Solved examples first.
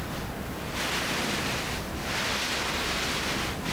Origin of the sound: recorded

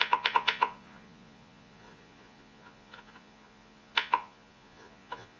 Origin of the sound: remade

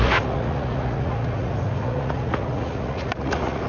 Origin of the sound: remade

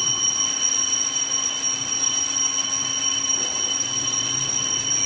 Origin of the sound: recorded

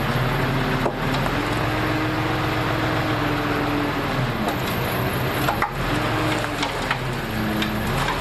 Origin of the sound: recorded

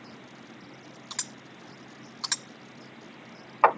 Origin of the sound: recorded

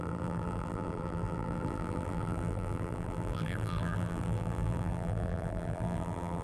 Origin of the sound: remade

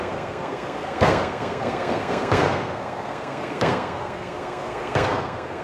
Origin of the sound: remade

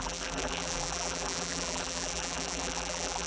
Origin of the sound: remade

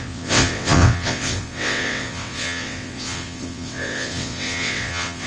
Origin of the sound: remade